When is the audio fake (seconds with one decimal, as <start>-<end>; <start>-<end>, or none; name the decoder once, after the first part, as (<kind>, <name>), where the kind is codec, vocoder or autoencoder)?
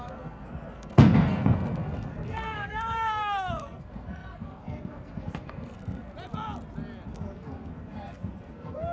0.0-6.1 (codec, SNAC); 7.1-8.9